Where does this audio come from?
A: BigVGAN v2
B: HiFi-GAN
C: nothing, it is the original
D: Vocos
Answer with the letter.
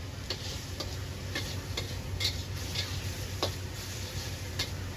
C